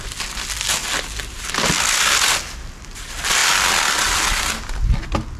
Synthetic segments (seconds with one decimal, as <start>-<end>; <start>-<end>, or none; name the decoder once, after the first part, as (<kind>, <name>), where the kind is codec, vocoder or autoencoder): none